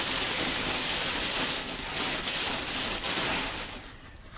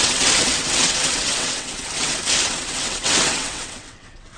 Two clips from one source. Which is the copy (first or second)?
second